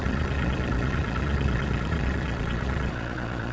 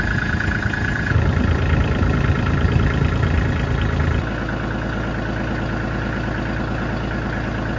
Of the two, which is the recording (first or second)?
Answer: second